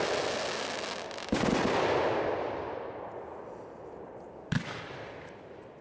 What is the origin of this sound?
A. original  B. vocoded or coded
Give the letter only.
A